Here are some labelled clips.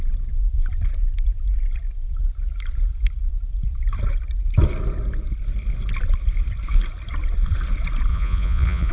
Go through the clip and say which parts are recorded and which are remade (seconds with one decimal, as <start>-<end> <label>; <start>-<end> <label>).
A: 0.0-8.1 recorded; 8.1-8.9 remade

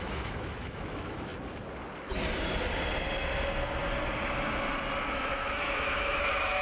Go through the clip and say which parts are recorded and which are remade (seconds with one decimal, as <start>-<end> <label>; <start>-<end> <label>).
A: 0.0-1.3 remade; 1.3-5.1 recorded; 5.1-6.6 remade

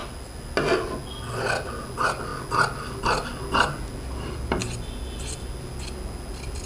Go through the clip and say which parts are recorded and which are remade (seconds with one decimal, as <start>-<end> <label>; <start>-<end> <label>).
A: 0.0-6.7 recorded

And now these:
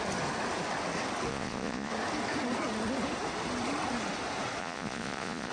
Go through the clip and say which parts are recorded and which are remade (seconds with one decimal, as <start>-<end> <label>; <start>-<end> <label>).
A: 0.0-1.3 recorded; 1.3-1.9 remade; 1.9-4.6 recorded; 4.6-5.5 remade

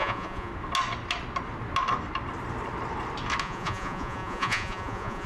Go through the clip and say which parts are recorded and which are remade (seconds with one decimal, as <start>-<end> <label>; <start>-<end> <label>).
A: 0.0-0.5 remade; 0.5-3.4 recorded; 3.4-5.3 remade

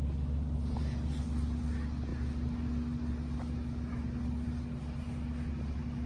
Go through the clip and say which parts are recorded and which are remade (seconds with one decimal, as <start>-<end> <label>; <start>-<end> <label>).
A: 0.0-6.1 recorded